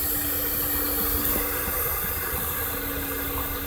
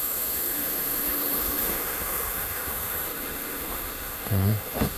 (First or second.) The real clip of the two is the first